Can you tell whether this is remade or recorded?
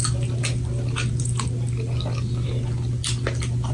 recorded